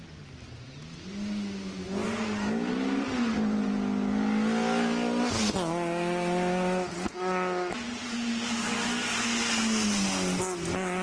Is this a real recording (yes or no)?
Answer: yes